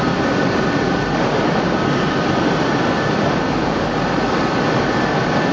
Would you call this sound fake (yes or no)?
yes